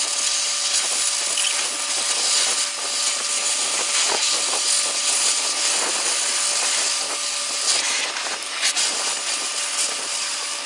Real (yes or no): yes